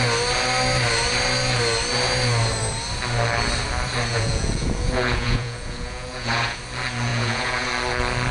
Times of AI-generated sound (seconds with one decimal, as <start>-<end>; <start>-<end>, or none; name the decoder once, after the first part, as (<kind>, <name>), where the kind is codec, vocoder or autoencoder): 4.1-6.6 (vocoder, Vocos); 7.1-7.7